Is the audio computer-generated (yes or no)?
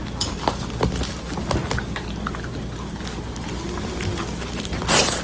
no